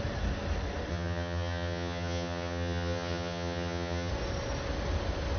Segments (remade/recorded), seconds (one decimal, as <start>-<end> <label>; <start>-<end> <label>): 0.0-0.9 recorded; 0.9-4.1 remade; 4.1-5.4 recorded